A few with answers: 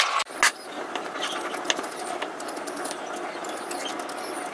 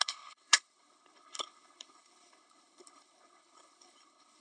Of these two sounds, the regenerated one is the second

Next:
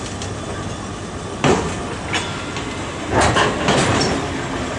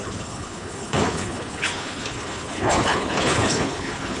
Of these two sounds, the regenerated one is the second